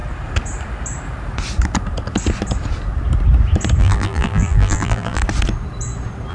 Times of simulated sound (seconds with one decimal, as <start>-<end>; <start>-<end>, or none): 3.8-5.2